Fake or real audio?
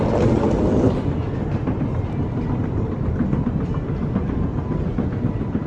real